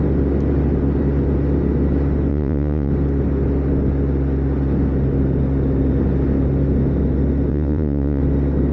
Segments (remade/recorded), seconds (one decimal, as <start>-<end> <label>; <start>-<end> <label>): 0.0-2.3 recorded; 2.3-2.9 remade; 2.9-7.5 recorded; 7.5-8.2 remade; 8.2-8.7 recorded

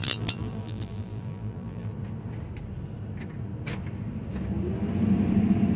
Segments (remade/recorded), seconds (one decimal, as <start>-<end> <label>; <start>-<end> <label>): 0.0-1.9 remade; 1.9-5.8 recorded